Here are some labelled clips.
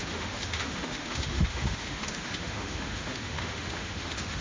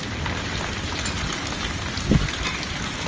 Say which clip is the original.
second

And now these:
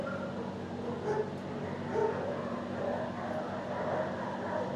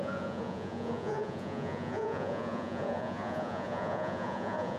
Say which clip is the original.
first